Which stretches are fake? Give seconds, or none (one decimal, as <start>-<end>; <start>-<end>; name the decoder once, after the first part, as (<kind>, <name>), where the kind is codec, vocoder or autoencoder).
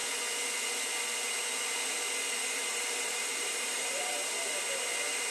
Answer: 2.4-4.3 (vocoder, BigVGAN v2)